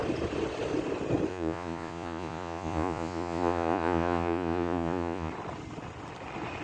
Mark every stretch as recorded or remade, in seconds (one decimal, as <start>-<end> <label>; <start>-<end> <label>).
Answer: 0.0-1.3 recorded; 1.3-5.3 remade; 5.3-6.6 recorded